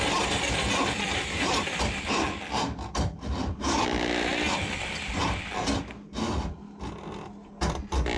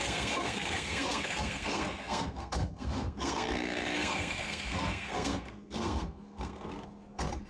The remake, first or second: second